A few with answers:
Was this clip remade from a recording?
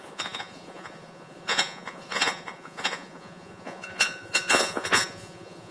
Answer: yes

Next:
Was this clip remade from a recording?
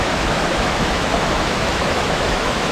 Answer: yes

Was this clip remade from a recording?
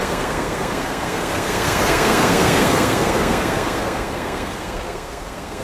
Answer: yes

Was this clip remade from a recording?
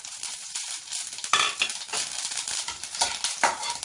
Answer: yes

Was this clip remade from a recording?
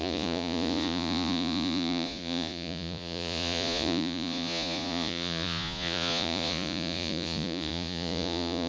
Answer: yes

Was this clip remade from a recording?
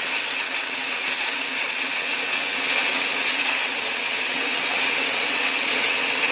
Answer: yes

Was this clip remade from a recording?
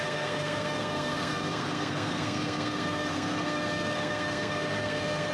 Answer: yes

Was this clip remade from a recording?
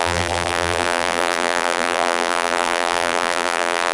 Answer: yes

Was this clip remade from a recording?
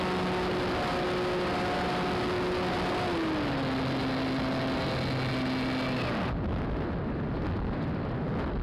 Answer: no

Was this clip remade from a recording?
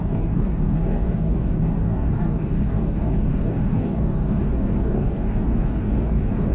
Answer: yes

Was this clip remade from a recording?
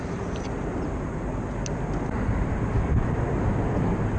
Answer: no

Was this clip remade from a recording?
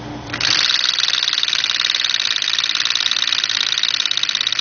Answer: yes